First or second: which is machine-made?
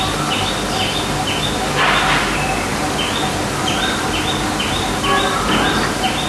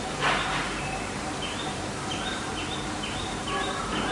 second